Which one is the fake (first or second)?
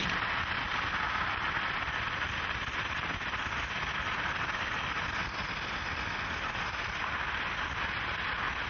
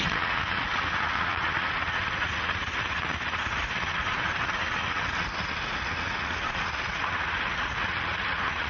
second